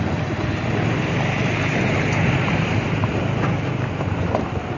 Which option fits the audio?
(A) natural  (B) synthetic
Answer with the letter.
A